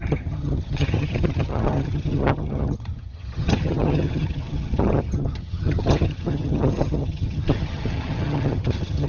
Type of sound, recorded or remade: remade